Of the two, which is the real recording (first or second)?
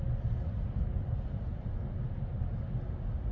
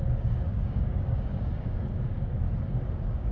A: first